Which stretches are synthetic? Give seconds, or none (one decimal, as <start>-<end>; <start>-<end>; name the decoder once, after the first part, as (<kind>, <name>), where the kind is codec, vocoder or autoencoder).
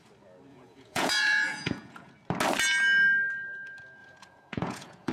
0.5-2.1 (vocoder, Vocos); 4.0-5.1